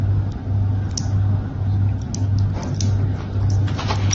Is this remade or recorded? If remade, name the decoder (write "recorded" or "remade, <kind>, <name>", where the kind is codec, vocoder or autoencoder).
recorded